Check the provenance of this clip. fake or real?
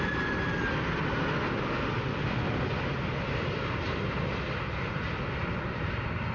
real